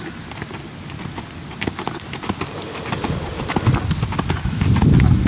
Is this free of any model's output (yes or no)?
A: yes